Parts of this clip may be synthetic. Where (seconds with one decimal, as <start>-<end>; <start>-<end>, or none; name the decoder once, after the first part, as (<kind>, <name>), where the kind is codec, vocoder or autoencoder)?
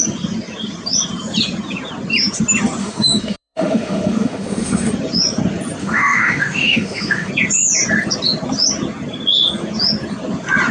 2.8-4.9 (autoencoder, DAC-VAE); 5.8-7.3